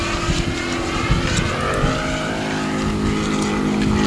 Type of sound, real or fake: real